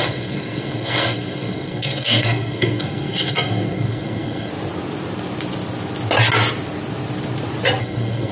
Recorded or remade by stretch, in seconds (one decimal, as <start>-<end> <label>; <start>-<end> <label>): 0.0-4.5 remade; 4.5-7.8 recorded; 7.8-8.3 remade